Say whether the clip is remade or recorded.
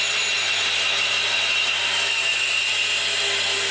recorded